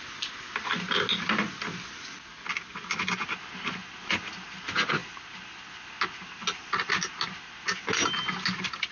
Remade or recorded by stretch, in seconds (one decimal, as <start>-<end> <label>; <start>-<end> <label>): 0.0-8.9 recorded